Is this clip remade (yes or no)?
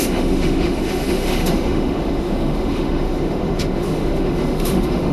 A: yes